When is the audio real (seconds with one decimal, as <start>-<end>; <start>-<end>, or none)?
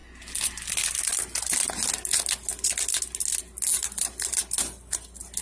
0.0-5.4